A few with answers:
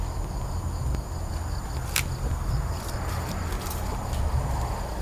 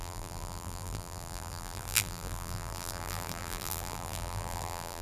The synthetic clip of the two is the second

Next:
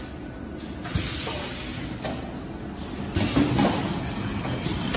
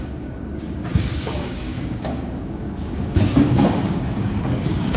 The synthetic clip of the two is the second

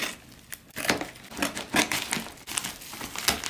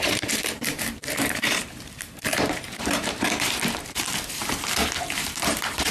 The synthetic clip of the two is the second